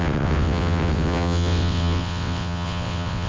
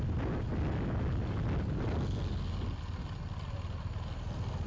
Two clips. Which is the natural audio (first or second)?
second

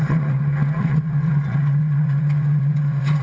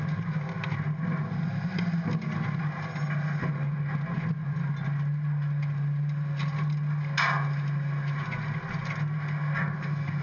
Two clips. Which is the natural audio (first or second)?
second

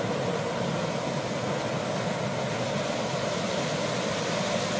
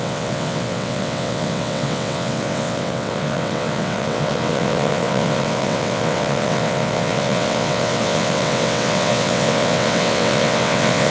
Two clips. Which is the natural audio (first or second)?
first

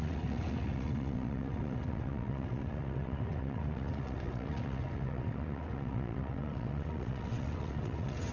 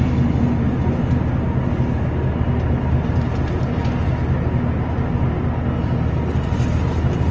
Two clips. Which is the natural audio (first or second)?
second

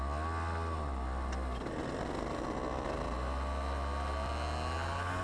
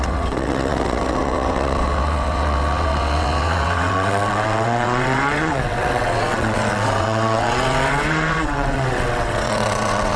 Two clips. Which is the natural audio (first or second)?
first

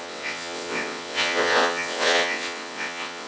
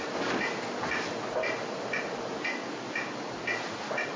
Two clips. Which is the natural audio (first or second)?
second